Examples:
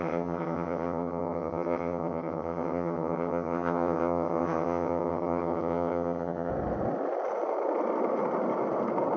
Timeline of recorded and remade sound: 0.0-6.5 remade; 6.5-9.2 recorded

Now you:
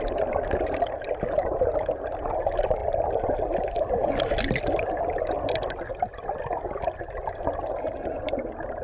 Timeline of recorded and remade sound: 0.0-8.8 recorded

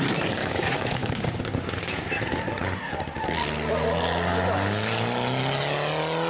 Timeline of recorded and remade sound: 0.0-0.4 recorded; 0.4-1.2 remade; 1.2-6.3 recorded